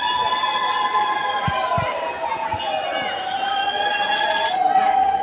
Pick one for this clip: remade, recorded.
recorded